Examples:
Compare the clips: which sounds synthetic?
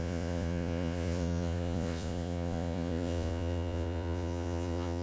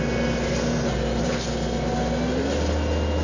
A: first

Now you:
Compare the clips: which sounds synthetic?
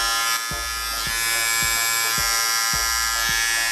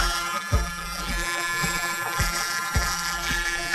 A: second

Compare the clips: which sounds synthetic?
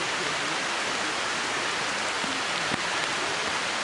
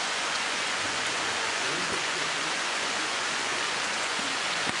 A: second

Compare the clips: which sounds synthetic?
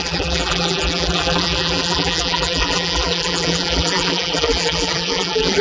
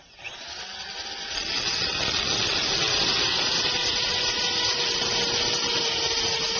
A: first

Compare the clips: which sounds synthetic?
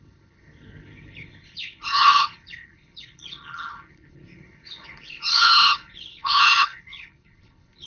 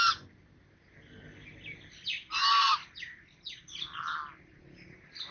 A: first